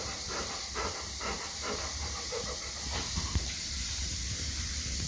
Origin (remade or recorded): remade